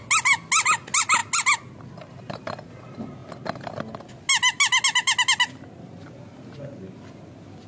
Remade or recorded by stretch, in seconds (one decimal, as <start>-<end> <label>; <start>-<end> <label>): 0.0-7.7 recorded